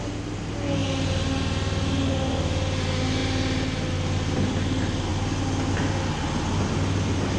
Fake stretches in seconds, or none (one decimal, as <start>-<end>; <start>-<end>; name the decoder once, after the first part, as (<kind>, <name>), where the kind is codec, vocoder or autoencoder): none